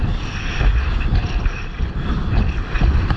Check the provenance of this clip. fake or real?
real